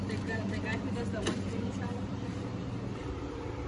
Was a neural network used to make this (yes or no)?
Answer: yes